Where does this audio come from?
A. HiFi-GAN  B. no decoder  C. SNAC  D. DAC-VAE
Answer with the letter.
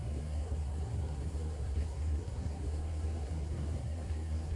C